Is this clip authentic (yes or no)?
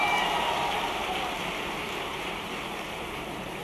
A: no